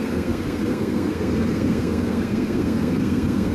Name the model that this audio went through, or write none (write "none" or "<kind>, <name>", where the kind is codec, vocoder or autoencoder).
codec, SNAC